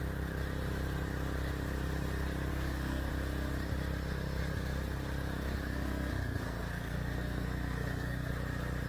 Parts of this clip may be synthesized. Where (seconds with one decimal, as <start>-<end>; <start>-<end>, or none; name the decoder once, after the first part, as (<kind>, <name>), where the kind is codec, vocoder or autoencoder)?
2.5-3.1 (codec, SNAC); 5.7-8.3